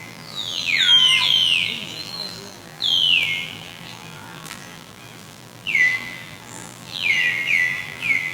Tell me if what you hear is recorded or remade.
remade